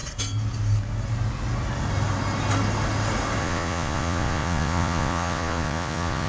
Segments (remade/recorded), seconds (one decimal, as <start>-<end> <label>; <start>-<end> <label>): 0.0-3.4 recorded; 3.4-6.3 remade